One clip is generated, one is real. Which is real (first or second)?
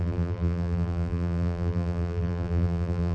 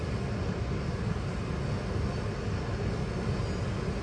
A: second